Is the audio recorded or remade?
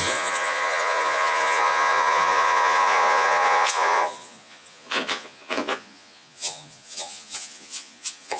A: remade